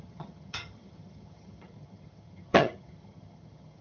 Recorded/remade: remade